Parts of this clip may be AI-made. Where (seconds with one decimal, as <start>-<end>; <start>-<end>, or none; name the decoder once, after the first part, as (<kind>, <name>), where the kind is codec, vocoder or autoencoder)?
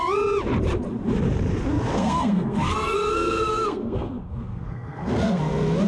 1.9-5.4 (codec, SNAC)